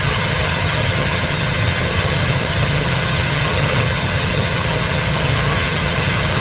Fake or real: fake